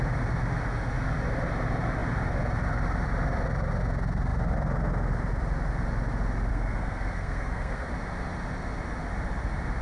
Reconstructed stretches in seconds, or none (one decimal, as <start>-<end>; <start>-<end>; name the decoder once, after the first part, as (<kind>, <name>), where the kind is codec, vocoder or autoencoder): 6.5-7.9 (codec, SNAC)